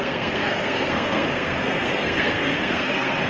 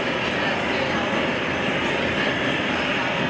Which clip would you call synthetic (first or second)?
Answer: first